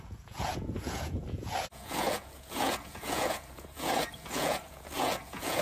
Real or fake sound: fake